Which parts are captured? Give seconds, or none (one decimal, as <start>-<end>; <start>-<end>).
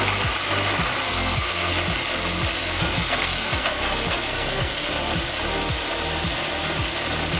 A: 0.0-1.0; 1.7-2.6; 4.9-7.4